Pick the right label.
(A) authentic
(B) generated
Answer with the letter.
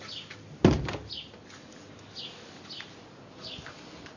A